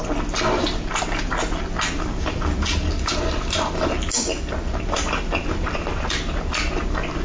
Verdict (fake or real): real